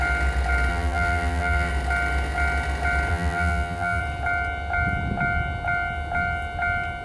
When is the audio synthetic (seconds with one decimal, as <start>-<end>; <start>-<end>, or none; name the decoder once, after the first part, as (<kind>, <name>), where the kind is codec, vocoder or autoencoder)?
0.7-1.7 (vocoder, BigVGAN v2); 3.1-4.0